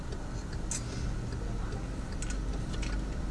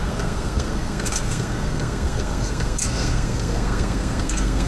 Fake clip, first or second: second